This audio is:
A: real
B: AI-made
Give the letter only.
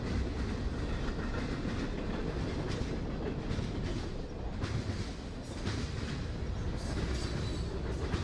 A